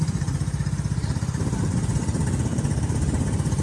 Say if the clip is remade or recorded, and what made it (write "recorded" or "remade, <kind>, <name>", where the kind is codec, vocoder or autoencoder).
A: remade, vocoder, BigVGAN v2